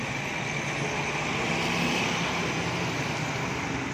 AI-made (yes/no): no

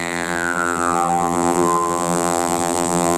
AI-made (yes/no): yes